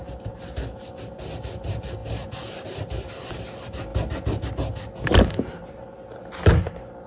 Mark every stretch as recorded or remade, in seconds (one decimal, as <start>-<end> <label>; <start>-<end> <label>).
0.0-7.1 recorded